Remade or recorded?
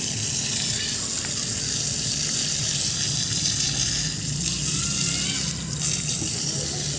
recorded